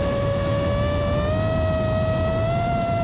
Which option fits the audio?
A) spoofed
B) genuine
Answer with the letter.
B